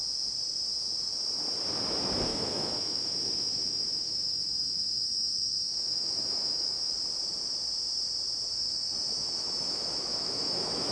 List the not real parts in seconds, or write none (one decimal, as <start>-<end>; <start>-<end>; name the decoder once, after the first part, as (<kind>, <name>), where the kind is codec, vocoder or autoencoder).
2.3-6.9 (autoencoder, DAC-VAE); 8.5-10.9